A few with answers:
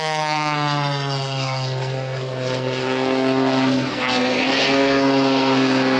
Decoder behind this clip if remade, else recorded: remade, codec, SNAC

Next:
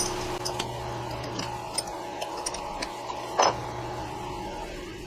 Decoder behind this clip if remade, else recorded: recorded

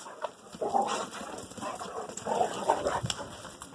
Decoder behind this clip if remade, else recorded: recorded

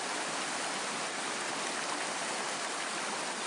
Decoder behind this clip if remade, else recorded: recorded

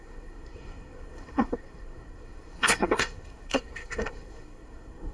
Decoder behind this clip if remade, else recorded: remade, codec, SNAC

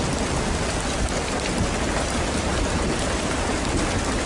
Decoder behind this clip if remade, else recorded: recorded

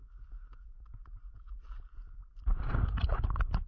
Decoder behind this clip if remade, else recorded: recorded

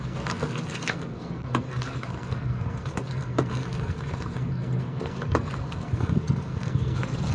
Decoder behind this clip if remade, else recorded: remade, codec, SNAC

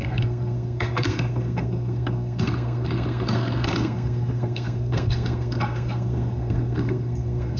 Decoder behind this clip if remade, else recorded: remade, codec, SNAC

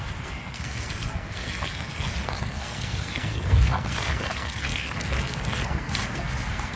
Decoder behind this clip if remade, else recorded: remade, codec, SNAC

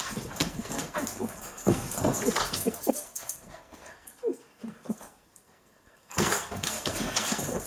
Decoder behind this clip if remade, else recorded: remade, codec, SNAC